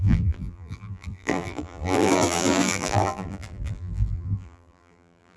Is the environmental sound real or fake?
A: fake